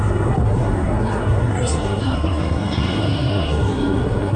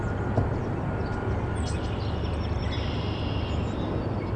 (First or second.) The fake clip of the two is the first